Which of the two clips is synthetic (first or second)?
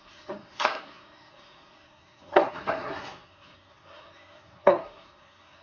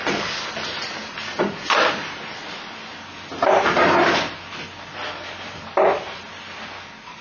first